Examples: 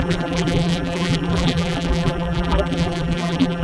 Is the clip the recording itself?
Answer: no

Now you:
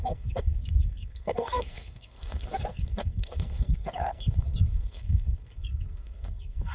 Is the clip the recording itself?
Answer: no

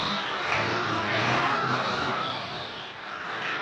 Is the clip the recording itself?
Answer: no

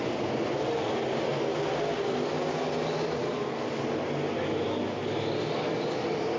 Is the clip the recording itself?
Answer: yes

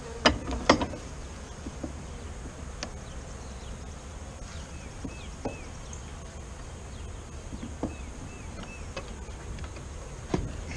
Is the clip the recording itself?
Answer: yes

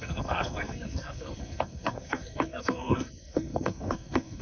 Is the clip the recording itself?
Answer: no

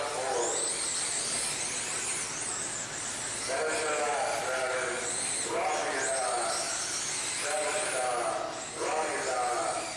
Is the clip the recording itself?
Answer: yes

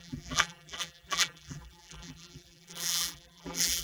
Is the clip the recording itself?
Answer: no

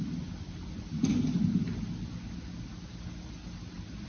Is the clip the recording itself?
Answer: yes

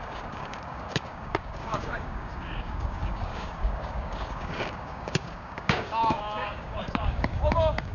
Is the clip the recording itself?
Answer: no